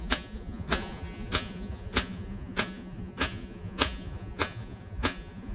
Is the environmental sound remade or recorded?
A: remade